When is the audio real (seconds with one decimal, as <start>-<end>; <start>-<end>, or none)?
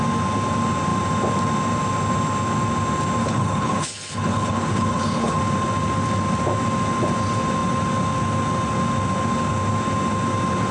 0.0-3.2; 5.4-10.7